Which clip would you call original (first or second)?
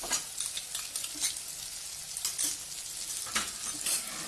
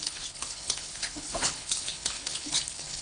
first